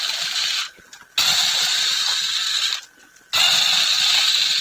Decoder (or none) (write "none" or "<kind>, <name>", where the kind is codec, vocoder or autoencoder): none